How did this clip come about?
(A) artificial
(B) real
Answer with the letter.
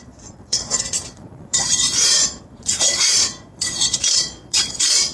A